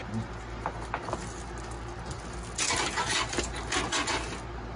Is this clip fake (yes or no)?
no